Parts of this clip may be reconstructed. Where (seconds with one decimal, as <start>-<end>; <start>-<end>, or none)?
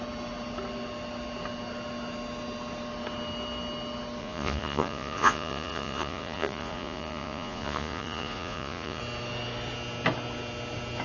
4.2-9.0